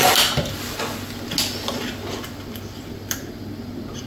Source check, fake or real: real